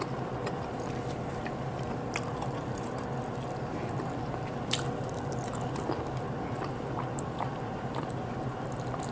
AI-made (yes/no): yes